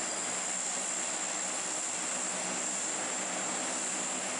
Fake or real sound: real